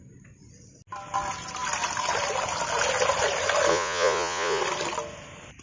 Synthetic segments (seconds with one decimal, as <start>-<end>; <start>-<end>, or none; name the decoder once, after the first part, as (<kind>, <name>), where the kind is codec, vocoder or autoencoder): 3.7-4.6 (vocoder, Vocos)